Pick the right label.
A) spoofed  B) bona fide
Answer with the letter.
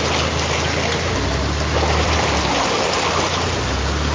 B